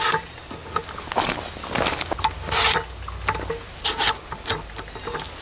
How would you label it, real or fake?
real